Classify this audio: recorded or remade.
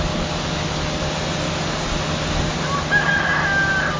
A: recorded